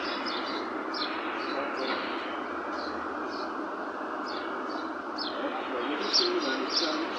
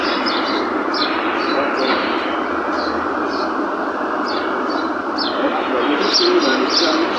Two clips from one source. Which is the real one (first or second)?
first